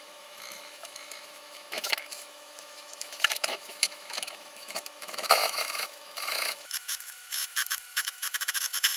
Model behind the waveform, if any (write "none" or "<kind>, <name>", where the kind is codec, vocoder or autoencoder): autoencoder, DAC-VAE